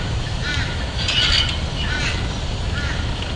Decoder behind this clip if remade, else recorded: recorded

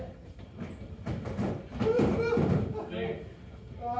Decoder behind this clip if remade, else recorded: recorded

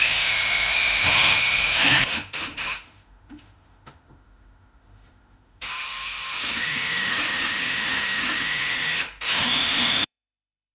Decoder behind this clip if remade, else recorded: remade, autoencoder, DAC-VAE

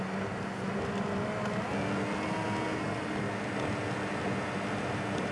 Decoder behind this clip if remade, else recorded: recorded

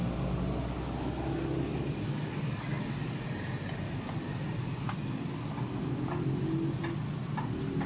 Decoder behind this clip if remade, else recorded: recorded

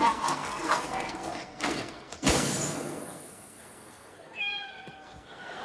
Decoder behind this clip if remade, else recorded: remade, codec, SNAC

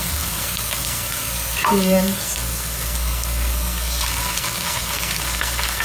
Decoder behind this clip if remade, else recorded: remade, codec, SNAC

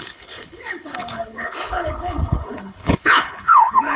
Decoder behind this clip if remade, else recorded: remade, codec, HILCodec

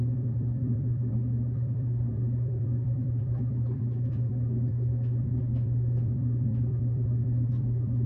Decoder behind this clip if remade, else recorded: remade, vocoder, BigVGAN v2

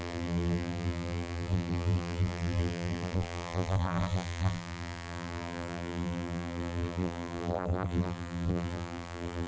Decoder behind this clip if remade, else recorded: remade, vocoder, BigVGAN v2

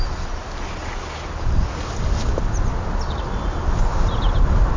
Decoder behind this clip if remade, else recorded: recorded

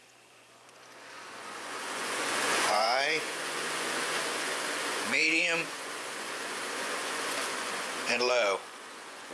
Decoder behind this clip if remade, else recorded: remade, vocoder, Vocos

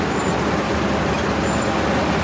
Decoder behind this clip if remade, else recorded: recorded